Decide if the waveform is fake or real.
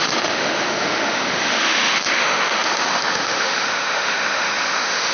fake